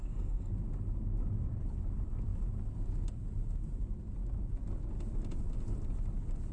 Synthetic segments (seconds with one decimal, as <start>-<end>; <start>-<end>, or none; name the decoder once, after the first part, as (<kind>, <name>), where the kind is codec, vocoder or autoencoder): 0.0-0.5 (codec, SNAC)